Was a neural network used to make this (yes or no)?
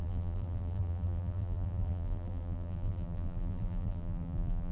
yes